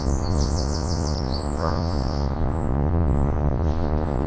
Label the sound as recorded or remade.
remade